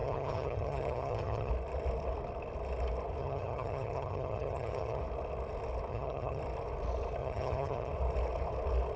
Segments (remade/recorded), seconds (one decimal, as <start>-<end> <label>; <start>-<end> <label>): 0.0-1.5 remade; 1.5-3.2 recorded; 3.2-5.0 remade; 5.0-5.9 recorded; 5.9-6.4 remade; 6.4-7.2 recorded; 7.2-7.9 remade; 7.9-9.0 recorded